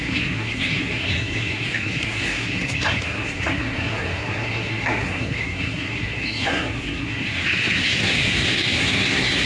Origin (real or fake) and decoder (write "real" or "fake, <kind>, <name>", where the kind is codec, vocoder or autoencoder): fake, codec, SNAC